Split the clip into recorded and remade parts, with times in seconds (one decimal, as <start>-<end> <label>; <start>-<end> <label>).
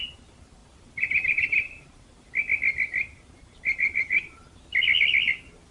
0.0-0.6 recorded; 0.6-2.3 remade; 2.3-3.0 recorded; 3.0-4.5 remade; 4.5-5.7 recorded